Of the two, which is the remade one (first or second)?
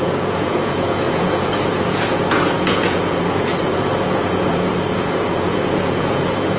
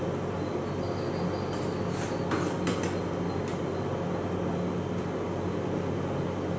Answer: first